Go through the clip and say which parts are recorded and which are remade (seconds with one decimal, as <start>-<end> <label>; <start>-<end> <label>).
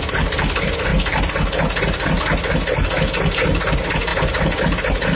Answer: 0.0-5.1 recorded